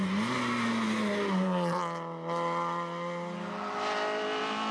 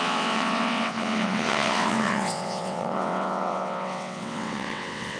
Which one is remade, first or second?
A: second